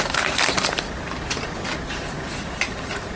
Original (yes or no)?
yes